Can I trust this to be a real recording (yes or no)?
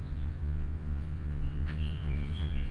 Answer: no